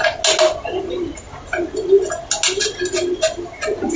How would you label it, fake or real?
real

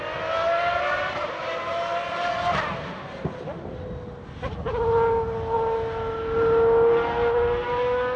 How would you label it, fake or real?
real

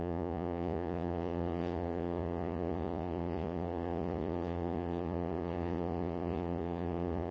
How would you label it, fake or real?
fake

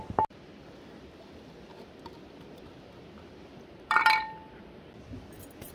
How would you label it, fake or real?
real